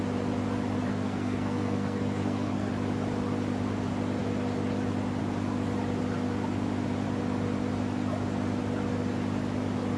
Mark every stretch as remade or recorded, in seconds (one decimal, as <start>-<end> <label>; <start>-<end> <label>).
0.0-0.9 recorded; 0.9-2.7 remade; 2.7-10.0 recorded

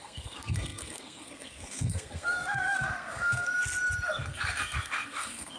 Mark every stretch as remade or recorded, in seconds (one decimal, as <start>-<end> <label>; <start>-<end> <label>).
0.0-3.5 remade; 3.5-4.1 recorded; 4.1-5.6 remade

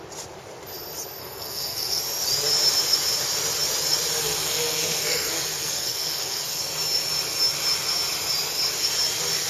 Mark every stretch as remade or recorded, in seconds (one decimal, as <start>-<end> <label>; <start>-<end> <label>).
0.0-1.2 recorded; 1.2-2.0 remade; 2.0-4.2 recorded; 4.2-6.6 remade; 6.6-9.5 recorded

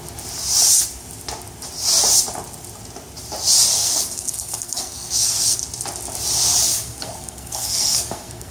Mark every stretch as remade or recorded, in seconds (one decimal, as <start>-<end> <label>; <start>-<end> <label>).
0.0-3.8 recorded; 3.8-5.6 remade; 5.6-6.7 recorded; 6.7-8.5 remade

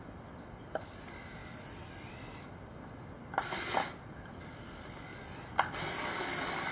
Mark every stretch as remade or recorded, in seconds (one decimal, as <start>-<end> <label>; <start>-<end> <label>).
0.0-6.7 recorded

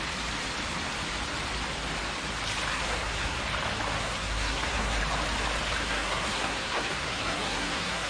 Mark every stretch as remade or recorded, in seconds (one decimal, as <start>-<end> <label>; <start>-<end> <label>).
0.0-2.7 recorded; 2.7-3.4 remade; 3.4-4.0 recorded; 4.0-5.0 remade; 5.0-5.8 recorded; 5.8-8.1 remade